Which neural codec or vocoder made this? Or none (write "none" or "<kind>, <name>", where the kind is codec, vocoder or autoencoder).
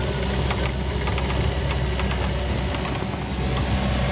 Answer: none